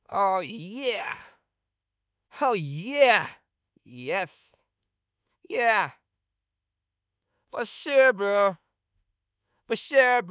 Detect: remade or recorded remade